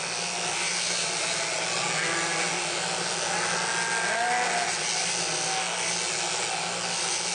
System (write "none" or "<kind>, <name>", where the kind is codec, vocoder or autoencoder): none